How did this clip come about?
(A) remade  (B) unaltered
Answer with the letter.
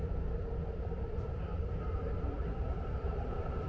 A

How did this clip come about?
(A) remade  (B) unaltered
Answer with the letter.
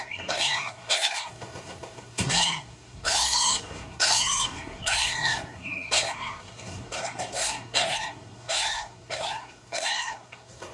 A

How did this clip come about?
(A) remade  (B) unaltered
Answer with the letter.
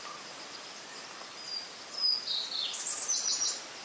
B